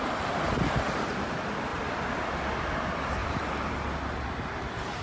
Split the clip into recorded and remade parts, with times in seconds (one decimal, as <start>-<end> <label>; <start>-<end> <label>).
0.0-5.0 recorded